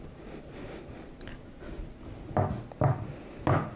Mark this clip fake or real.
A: real